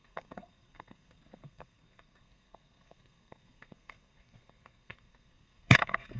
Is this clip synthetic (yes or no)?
yes